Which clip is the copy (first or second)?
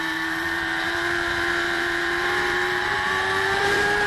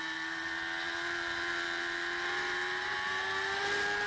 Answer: first